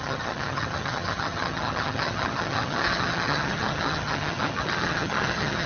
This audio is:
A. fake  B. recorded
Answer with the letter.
A